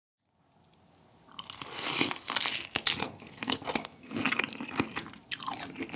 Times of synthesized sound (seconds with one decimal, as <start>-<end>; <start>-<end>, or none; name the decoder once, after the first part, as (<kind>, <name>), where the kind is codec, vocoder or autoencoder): 3.0-4.4 (codec, SNAC)